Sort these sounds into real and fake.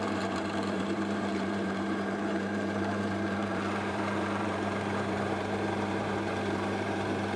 fake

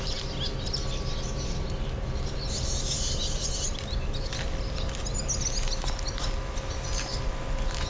real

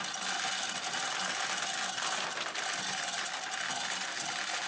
real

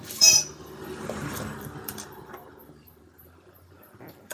fake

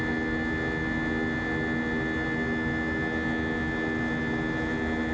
real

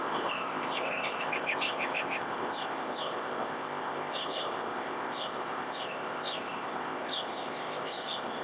fake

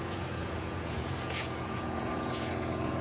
fake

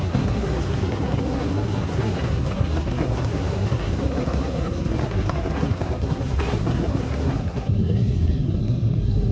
fake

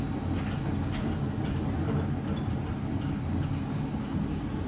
real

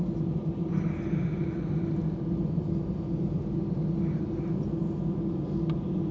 real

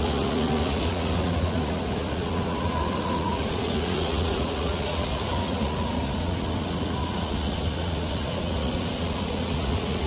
fake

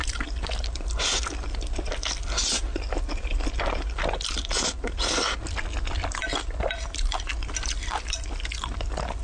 real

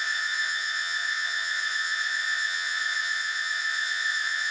fake